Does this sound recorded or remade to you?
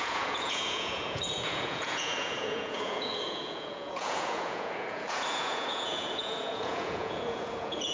remade